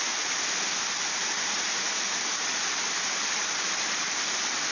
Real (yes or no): no